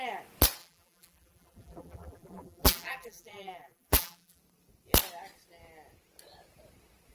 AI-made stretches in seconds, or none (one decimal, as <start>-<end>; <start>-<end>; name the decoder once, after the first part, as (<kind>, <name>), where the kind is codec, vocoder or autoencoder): 0.6-4.4 (vocoder, BigVGAN v2)